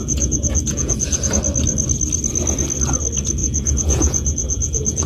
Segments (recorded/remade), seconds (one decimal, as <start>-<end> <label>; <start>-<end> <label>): 0.0-1.3 remade; 1.3-3.4 recorded; 3.4-5.1 remade